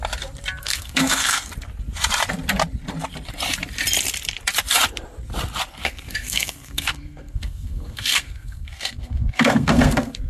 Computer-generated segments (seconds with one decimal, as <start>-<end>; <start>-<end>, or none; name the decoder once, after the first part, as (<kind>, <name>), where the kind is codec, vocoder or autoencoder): 0.6-1.5 (codec, SNAC); 5.8-10.3